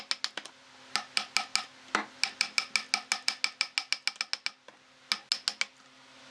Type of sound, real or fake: real